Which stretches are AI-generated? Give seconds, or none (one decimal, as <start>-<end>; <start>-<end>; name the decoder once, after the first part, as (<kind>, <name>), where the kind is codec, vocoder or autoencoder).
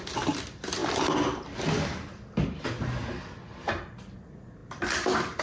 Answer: none